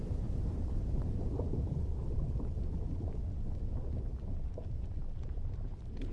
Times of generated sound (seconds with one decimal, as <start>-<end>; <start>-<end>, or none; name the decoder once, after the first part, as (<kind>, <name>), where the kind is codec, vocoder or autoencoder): 0.0-1.7 (vocoder, BigVGAN v2); 5.3-6.1